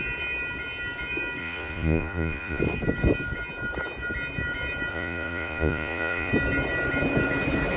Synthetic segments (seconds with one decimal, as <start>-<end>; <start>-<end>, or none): 1.4-2.6; 4.9-6.3